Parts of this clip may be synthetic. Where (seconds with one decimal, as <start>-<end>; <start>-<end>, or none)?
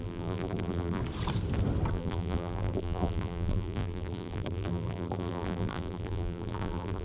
0.0-1.0; 1.9-7.0